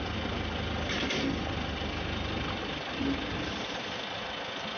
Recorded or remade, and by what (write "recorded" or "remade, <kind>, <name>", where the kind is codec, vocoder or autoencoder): recorded